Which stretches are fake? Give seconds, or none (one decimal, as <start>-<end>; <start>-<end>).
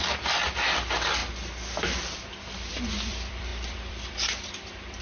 0.0-1.2; 2.6-5.0